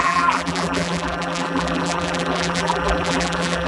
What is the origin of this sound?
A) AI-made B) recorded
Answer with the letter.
A